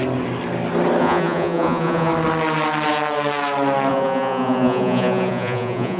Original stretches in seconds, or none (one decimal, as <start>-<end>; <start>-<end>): 0.0-1.0; 2.1-3.9